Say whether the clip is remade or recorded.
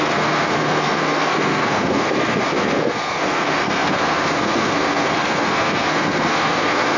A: remade